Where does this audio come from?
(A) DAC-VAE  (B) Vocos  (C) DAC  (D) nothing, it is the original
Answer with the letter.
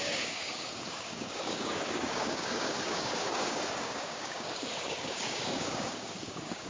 C